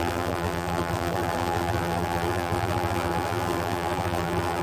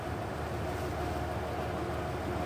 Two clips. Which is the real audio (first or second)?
second